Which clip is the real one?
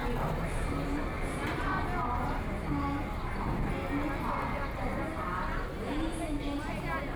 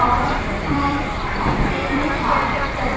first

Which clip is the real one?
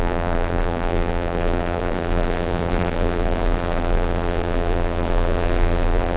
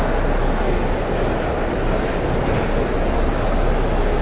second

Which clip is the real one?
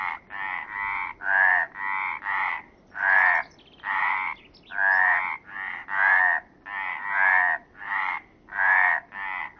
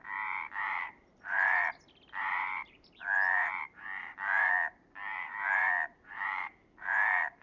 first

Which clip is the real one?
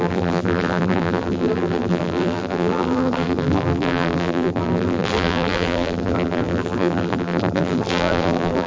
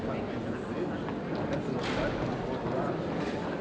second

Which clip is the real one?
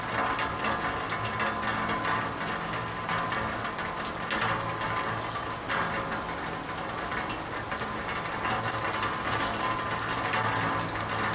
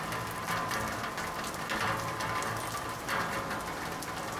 first